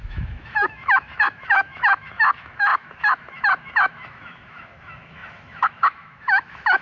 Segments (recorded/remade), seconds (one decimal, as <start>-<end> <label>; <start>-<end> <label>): 0.0-6.8 remade